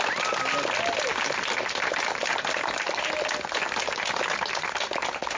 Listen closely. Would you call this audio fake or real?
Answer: real